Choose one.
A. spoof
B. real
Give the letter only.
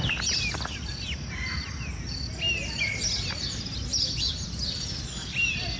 B